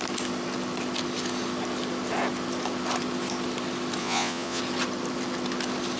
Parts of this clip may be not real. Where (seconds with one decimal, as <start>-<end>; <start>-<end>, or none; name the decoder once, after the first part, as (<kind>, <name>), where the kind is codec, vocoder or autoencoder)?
4.0-4.6 (vocoder, Vocos)

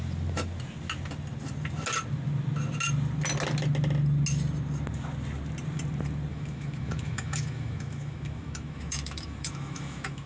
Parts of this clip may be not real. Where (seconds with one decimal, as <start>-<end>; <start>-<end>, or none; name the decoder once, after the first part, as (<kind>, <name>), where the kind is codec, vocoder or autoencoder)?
6.3-10.3 (autoencoder, DAC-VAE)